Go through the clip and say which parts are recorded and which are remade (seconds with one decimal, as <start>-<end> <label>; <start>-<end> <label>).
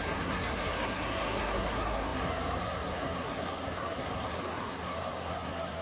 0.0-5.8 remade